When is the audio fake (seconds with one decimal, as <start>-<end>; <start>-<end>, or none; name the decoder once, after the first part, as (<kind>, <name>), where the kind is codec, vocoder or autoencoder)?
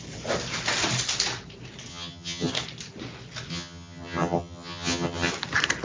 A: 1.9-2.5 (vocoder, HiFi-GAN); 3.5-5.3